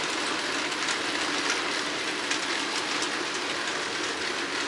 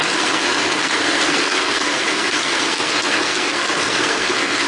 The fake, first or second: second